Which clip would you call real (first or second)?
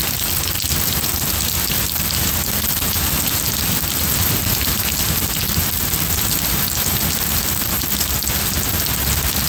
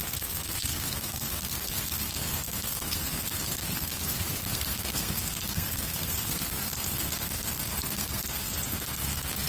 first